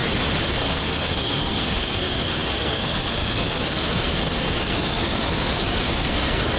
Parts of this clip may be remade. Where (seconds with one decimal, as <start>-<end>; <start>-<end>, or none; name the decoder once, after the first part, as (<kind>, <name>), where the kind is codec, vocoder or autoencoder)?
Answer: 0.5-6.6 (codec, SNAC)